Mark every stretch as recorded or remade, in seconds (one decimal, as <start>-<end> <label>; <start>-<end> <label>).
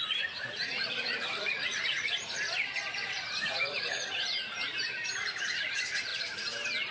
0.0-4.1 remade; 4.1-5.2 recorded; 5.2-6.1 remade; 6.1-6.9 recorded